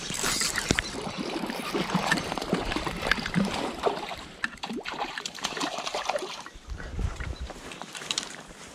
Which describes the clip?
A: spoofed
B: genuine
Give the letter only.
A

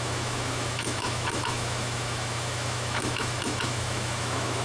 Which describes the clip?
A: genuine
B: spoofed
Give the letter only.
B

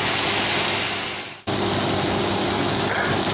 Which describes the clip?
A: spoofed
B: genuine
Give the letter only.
B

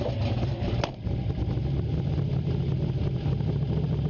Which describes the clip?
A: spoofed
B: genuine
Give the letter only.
B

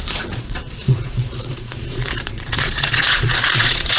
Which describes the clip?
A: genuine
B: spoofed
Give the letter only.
B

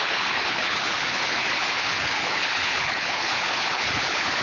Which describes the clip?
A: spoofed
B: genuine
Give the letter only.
A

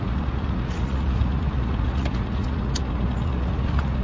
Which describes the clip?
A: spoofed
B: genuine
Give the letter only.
A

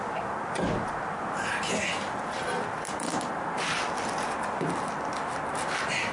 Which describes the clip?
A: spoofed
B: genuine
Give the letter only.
B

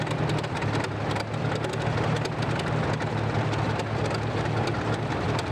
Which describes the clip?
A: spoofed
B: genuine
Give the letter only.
B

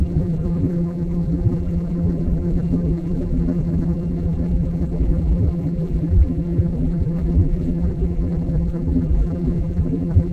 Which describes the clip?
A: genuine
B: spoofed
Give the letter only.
B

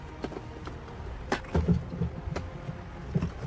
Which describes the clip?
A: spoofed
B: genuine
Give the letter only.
B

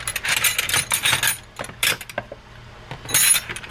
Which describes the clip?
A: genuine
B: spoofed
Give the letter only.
A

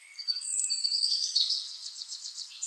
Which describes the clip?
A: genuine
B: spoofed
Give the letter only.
B